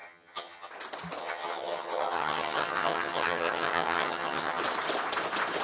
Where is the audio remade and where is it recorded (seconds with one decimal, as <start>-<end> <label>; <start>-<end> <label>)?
0.0-0.7 remade; 0.7-1.2 recorded; 1.2-4.6 remade; 4.6-5.6 recorded